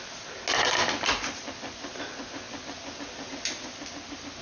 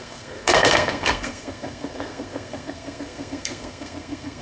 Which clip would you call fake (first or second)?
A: second